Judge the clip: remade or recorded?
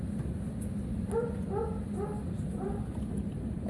recorded